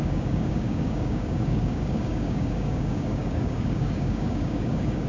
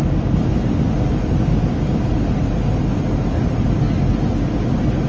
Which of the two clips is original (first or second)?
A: second